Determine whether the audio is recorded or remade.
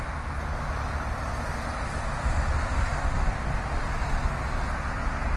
recorded